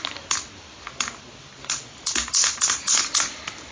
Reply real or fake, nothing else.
real